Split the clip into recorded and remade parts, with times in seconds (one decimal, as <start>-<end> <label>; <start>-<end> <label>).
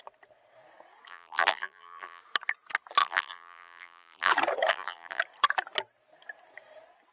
0.0-1.1 recorded; 1.1-2.2 remade; 2.2-3.0 recorded; 3.0-4.3 remade; 4.3-4.7 recorded; 4.7-5.2 remade; 5.2-7.1 recorded